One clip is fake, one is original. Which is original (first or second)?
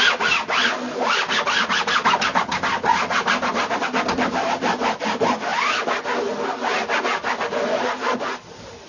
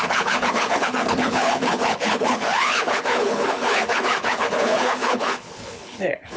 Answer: first